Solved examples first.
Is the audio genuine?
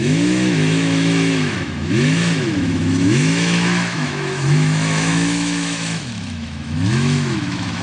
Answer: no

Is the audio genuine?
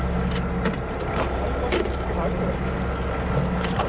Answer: yes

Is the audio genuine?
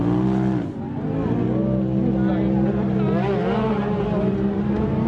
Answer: yes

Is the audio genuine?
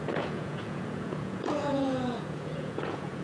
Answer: no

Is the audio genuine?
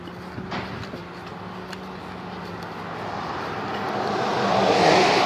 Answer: yes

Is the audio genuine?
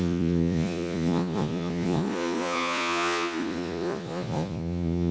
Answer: no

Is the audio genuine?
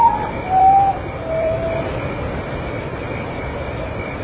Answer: no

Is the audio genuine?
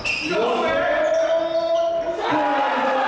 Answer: yes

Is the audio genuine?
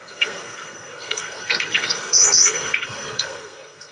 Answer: no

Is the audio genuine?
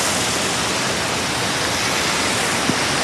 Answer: yes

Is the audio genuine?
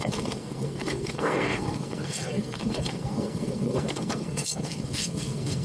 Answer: no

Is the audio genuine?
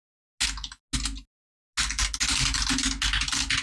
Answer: yes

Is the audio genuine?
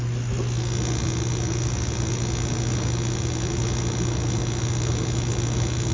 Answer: yes